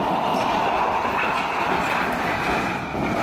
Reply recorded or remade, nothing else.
recorded